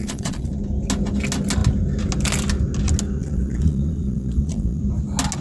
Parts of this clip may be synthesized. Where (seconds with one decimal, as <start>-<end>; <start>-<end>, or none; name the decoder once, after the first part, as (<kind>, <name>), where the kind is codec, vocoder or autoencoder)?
0.0-0.5 (vocoder, Vocos); 3.2-4.8